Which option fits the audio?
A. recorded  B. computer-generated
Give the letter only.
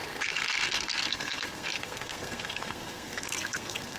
B